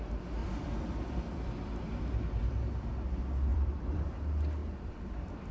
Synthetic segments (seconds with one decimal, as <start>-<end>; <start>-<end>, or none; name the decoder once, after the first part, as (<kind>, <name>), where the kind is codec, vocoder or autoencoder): 0.4-1.8 (vocoder, BigVGAN v2); 3.5-4.1